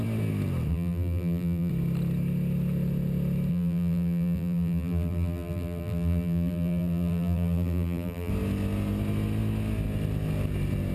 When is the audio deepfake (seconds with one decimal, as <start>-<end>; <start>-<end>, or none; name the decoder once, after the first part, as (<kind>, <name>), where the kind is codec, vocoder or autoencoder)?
0.7-1.7 (vocoder, BigVGAN v2); 3.5-8.3